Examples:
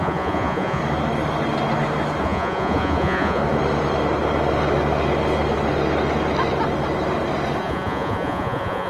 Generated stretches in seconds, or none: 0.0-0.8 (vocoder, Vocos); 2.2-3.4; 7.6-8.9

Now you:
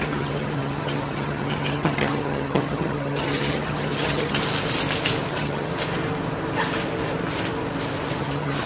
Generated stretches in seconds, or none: 0.0-4.4 (vocoder, HiFi-GAN); 5.3-5.7; 8.2-8.7

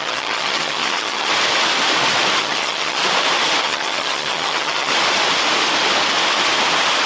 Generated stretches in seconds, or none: 0.0-1.3 (vocoder, HiFi-GAN); 2.4-3.0; 3.6-4.9

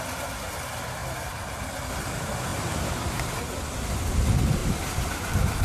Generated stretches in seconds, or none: 1.0-1.6 (vocoder, BigVGAN v2); 2.5-3.1; 4.6-5.6